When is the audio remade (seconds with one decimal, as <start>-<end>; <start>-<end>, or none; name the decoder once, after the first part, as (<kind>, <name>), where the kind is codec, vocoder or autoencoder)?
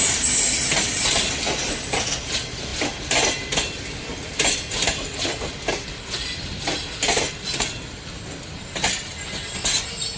none